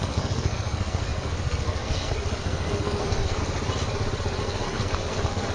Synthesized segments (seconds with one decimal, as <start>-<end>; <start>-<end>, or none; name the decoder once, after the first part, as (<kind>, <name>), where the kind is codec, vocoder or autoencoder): 0.0-3.4 (codec, SNAC); 4.4-5.5